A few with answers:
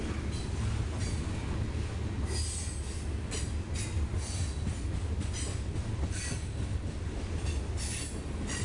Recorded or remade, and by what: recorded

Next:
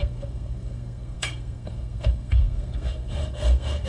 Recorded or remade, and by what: remade, codec, SNAC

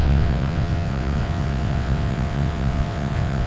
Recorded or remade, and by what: remade, vocoder, WaveNeXt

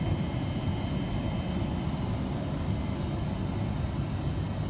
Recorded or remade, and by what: recorded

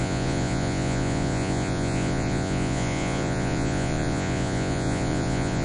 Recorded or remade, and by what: remade, vocoder, Vocos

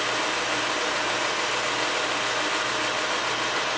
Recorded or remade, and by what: recorded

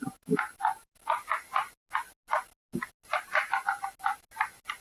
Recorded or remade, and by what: recorded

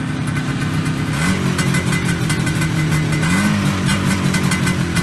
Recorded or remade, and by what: recorded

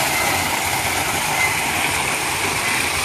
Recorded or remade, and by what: recorded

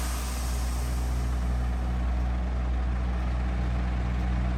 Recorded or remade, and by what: recorded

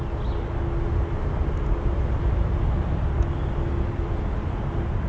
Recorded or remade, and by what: recorded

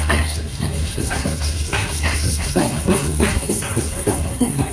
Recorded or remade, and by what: remade, codec, SNAC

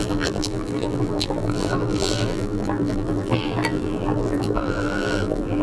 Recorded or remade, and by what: remade, vocoder, BigVGAN v2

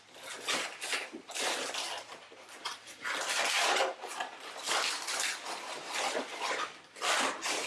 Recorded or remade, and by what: remade, vocoder, BigVGAN v2